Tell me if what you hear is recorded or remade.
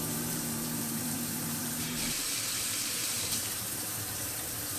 remade